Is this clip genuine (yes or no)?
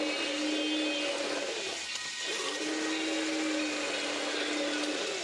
yes